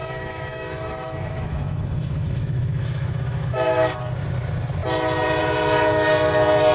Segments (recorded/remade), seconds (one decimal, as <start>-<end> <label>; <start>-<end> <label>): 0.0-4.0 remade; 4.0-6.7 recorded